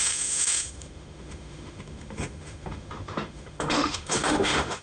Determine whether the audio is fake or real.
fake